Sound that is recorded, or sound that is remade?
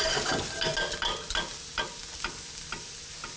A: recorded